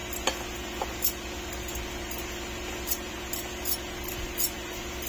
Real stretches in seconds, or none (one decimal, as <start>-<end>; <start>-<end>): 0.0-5.1